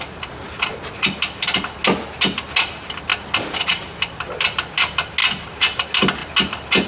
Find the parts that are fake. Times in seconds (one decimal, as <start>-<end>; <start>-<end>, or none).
none